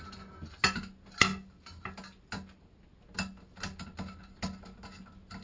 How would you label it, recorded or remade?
recorded